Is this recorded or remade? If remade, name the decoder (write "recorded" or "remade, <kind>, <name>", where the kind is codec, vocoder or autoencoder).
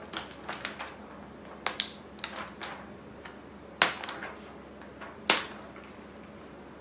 recorded